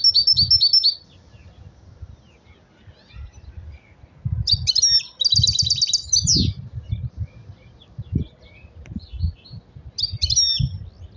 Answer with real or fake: real